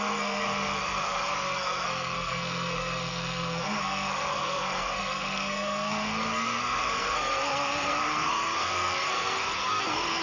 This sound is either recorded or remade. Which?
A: remade